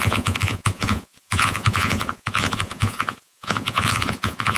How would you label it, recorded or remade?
remade